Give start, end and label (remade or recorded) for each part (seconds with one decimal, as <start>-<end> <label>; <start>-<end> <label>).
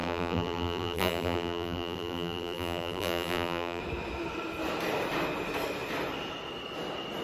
0.0-3.8 remade; 3.8-7.2 recorded